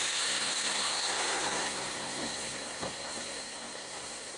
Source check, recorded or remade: remade